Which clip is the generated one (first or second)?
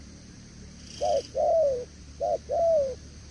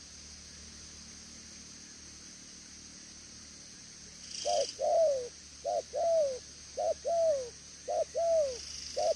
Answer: first